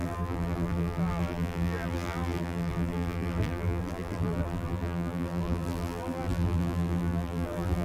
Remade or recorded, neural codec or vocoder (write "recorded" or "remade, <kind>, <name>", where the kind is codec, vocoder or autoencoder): remade, vocoder, BigVGAN v2